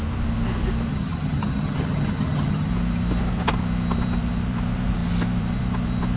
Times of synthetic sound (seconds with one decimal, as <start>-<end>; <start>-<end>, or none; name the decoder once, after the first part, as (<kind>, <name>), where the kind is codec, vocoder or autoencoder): 0.9-2.7 (vocoder, HiFi-GAN)